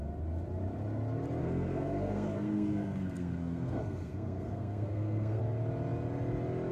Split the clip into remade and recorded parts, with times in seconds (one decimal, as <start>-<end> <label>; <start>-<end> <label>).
0.0-1.4 recorded; 1.4-5.4 remade; 5.4-6.7 recorded